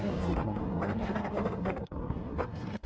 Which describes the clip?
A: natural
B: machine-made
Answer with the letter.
B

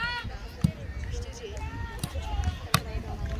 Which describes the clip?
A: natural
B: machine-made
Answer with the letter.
A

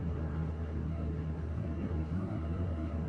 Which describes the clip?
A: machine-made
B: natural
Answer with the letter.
A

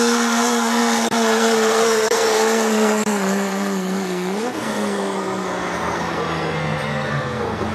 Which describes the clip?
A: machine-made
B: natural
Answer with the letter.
A